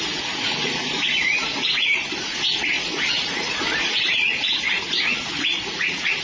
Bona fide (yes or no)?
no